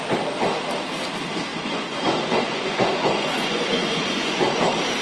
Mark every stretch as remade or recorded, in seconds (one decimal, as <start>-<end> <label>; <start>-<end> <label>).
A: 0.0-1.5 recorded; 1.5-4.5 remade; 4.5-5.0 recorded